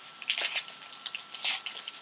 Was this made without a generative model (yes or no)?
yes